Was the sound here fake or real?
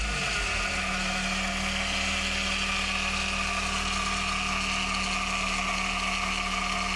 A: real